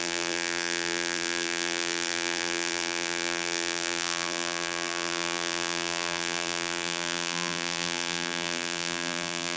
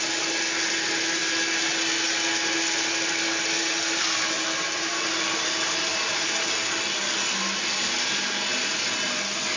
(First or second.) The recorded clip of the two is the second